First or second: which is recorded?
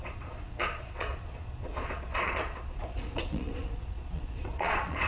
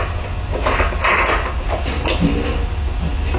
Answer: second